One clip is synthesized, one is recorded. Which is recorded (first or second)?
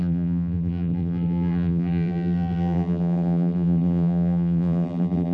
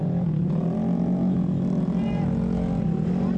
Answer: second